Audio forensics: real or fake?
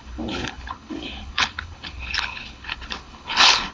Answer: fake